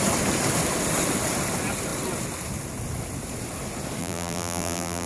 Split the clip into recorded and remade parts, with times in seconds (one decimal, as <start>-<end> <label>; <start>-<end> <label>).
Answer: 0.0-4.0 recorded; 4.0-5.1 remade